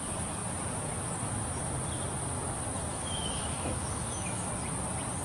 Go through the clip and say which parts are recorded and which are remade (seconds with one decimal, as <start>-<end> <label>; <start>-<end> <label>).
0.0-2.9 recorded; 2.9-4.5 remade; 4.5-5.2 recorded